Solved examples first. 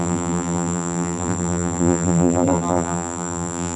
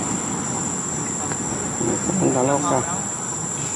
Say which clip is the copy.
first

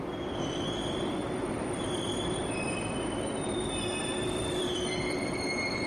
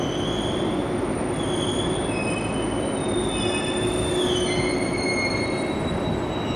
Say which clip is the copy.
first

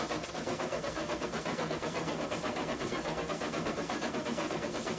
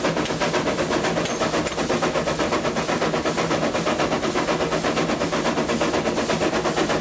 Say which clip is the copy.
first